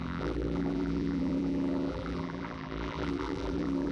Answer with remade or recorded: remade